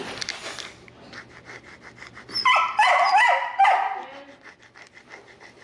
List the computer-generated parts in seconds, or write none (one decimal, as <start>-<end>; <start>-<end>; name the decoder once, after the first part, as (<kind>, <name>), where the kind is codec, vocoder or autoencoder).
none